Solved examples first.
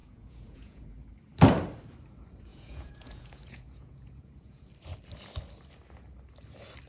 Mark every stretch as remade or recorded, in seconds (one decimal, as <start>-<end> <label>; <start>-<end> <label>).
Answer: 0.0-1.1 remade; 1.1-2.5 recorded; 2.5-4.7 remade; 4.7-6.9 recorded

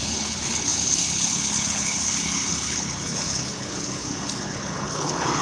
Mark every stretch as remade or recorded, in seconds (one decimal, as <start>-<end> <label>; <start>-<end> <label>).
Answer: 0.0-5.4 remade

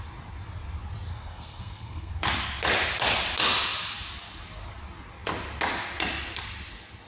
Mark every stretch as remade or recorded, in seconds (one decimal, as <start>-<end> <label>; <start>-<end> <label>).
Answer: 0.0-1.1 recorded; 1.1-2.1 remade; 2.1-7.1 recorded

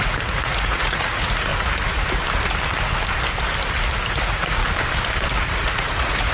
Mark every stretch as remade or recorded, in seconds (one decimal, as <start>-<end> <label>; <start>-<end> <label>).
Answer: 0.0-1.5 remade; 1.5-4.1 recorded; 4.1-4.6 remade; 4.6-5.3 recorded; 5.3-6.3 remade

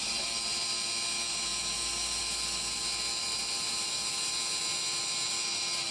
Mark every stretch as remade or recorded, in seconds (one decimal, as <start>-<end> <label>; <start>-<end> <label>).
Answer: 0.0-5.9 recorded